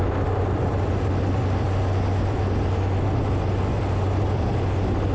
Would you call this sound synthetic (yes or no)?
no